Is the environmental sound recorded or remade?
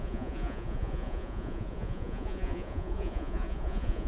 remade